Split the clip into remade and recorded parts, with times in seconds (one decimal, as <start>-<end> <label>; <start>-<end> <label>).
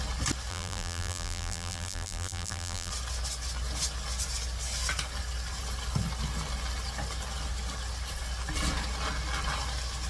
0.0-0.5 recorded; 0.5-2.9 remade; 2.9-10.1 recorded